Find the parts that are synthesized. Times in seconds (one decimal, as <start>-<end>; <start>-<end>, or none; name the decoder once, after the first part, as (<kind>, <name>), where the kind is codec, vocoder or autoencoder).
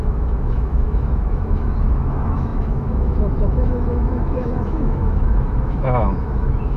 0.0-6.8 (autoencoder, DAC-VAE)